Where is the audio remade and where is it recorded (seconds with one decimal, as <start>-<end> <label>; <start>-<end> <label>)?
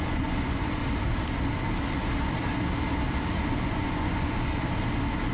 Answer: 0.0-0.8 remade; 0.8-3.6 recorded; 3.6-4.5 remade; 4.5-5.3 recorded